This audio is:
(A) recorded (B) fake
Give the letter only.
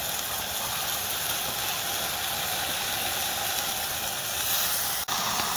A